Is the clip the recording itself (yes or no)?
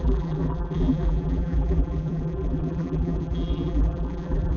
no